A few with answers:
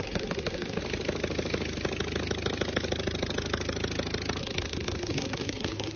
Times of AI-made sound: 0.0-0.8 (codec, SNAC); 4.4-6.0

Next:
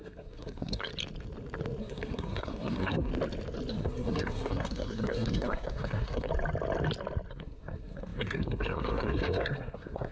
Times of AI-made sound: 0.0-0.9 (codec, SNAC); 1.8-3.1; 3.7-6.3; 7.3-10.1

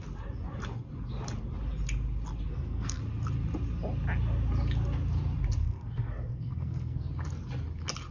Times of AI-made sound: 2.5-3.0 (codec, SNAC); 5.6-7.1